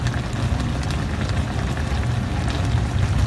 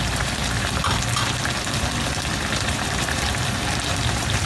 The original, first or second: first